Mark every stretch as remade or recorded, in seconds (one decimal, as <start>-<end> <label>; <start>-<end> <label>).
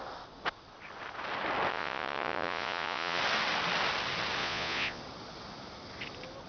0.0-1.7 recorded; 1.7-3.2 remade; 3.2-4.4 recorded; 4.4-5.0 remade; 5.0-6.5 recorded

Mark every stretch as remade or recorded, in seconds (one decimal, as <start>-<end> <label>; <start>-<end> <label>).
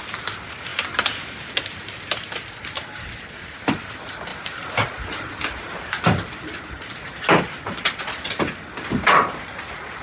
0.0-0.7 recorded; 0.7-1.5 remade; 1.5-10.0 recorded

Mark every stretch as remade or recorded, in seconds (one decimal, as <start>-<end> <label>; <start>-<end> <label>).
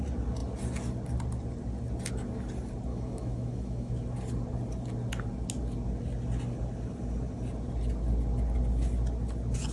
0.0-2.9 recorded; 2.9-3.9 remade; 3.9-9.7 recorded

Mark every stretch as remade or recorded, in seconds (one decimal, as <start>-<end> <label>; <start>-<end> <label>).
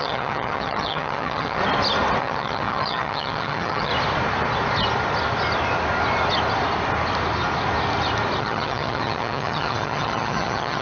0.0-1.6 remade; 1.6-2.2 recorded; 2.2-3.9 remade; 3.9-8.4 recorded; 8.4-10.8 remade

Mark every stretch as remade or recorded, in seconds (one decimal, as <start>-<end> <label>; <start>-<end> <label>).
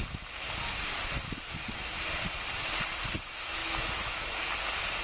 0.0-3.6 recorded; 3.6-4.5 remade; 4.5-5.0 recorded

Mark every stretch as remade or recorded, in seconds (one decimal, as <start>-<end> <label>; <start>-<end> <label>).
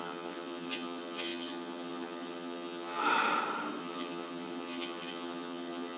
0.0-3.0 remade; 3.0-3.8 recorded; 3.8-6.0 remade